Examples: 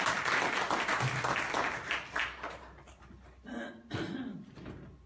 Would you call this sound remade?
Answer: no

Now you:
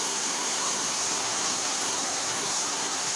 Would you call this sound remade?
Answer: yes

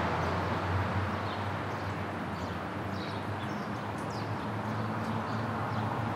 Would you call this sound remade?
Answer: no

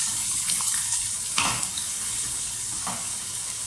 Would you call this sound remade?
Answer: yes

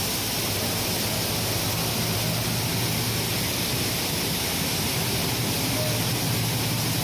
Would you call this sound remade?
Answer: no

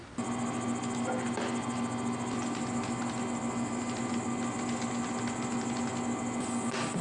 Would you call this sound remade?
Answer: no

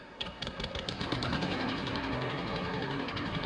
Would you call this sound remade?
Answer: yes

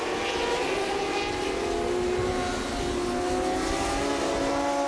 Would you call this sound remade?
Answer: no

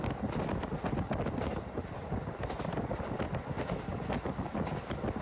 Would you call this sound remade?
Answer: no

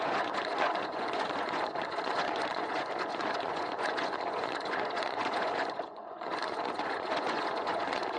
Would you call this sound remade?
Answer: yes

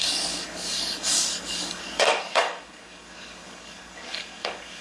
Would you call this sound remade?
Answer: yes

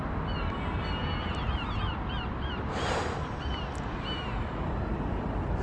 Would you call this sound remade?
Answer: no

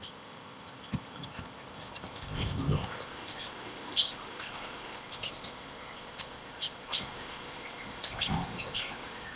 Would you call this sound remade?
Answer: yes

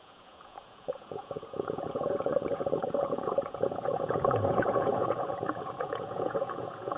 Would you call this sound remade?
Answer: yes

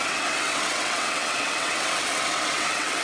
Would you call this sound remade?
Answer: yes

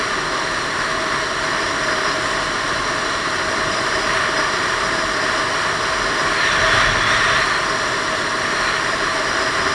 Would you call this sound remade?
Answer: no